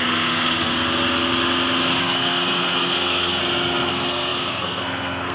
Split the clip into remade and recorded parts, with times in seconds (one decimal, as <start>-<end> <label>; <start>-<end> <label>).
0.0-0.7 remade; 0.7-2.0 recorded; 2.0-3.4 remade; 3.4-3.9 recorded; 3.9-5.3 remade